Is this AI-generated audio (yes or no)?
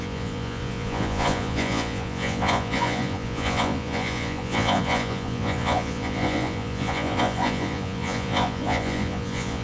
yes